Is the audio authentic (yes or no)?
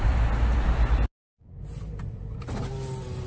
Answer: yes